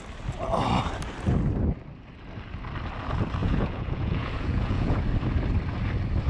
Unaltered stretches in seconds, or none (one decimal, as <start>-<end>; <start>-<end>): 0.0-3.4; 5.0-6.3